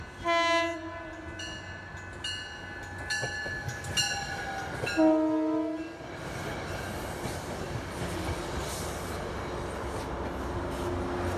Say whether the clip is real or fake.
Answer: real